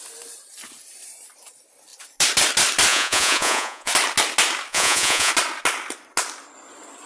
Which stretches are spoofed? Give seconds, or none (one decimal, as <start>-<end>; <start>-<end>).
2.9-3.9; 4.7-5.3